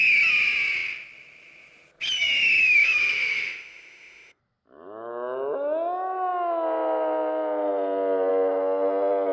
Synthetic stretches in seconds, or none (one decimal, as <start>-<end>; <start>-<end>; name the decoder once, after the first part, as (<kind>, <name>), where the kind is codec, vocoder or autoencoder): 2.6-4.4 (autoencoder, DAC-VAE)